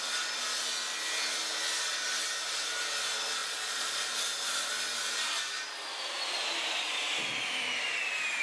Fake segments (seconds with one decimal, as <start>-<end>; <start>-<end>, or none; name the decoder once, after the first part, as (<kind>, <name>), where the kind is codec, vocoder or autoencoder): 3.4-4.0 (vocoder, Vocos)